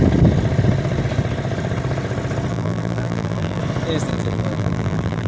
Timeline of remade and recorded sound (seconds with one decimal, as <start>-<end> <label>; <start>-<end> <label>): 0.0-2.5 recorded; 2.5-3.6 remade; 3.6-4.1 recorded; 4.1-5.3 remade